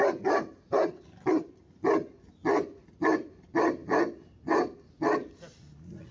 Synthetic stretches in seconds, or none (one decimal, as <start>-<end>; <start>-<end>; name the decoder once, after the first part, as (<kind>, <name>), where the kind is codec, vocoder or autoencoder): none